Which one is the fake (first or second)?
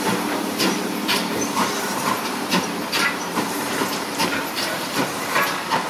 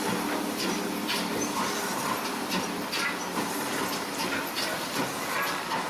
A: first